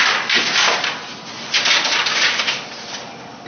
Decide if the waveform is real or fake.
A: real